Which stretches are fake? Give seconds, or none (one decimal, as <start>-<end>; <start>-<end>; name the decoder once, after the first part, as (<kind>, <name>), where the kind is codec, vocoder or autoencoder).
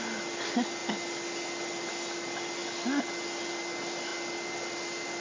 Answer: none